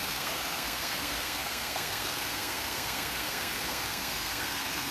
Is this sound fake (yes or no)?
yes